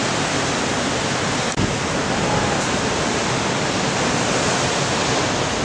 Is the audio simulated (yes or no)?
no